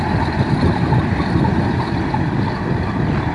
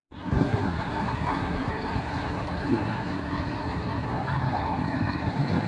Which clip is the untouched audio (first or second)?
first